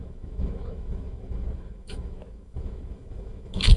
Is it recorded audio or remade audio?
remade